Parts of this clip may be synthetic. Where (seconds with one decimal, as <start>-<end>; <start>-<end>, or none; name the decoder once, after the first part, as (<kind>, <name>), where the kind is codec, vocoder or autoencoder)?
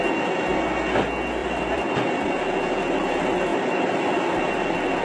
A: 1.4-2.3 (vocoder, BigVGAN v2); 3.5-4.4